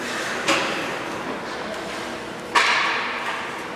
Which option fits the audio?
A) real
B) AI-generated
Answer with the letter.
A